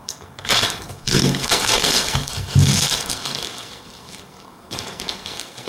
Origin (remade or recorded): remade